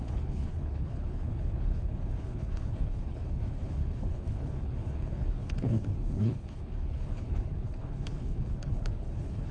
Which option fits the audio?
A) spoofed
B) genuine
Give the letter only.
A